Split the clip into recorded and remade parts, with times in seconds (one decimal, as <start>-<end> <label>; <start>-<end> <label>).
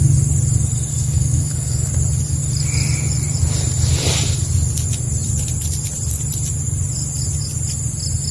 0.0-0.9 recorded; 0.9-1.9 remade; 1.9-8.3 recorded